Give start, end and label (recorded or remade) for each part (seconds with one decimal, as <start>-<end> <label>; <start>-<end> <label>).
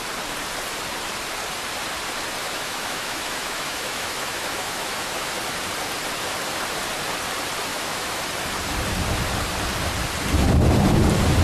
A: 0.0-2.4 recorded; 2.4-5.3 remade; 5.3-7.7 recorded; 7.7-8.2 remade; 8.2-11.4 recorded